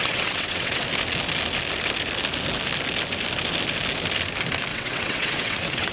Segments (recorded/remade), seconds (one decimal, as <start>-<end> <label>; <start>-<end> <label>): 0.0-0.8 remade; 0.8-4.7 recorded; 4.7-5.9 remade